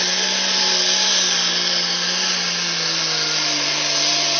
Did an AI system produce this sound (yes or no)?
no